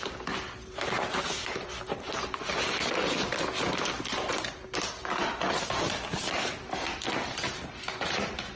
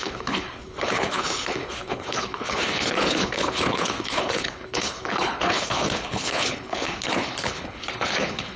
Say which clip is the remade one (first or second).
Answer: second